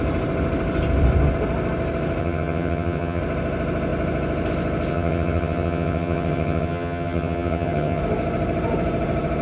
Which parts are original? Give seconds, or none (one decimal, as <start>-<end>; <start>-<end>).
0.0-2.2; 3.2-4.9; 8.0-9.4